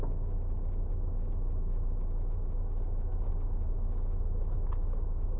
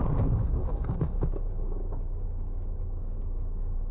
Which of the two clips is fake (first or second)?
second